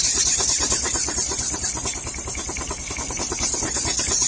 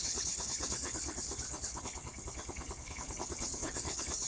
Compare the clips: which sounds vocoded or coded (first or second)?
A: second